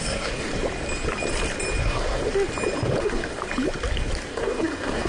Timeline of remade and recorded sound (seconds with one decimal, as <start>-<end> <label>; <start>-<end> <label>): 0.0-0.5 remade; 0.5-1.8 recorded; 1.8-2.2 remade; 2.2-3.0 recorded; 3.0-3.4 remade; 3.4-4.3 recorded; 4.3-5.1 remade